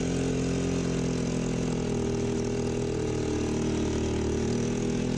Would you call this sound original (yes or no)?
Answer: yes